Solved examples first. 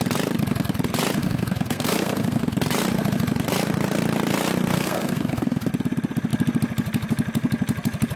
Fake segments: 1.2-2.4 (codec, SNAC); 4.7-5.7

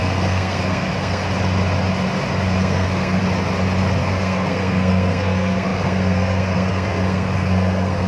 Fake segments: 0.0-1.2 (codec, SNAC); 2.6-3.2; 4.0-8.1